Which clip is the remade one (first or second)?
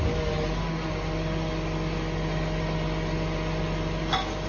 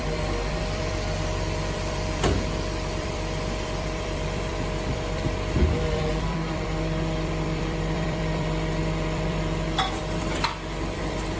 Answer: second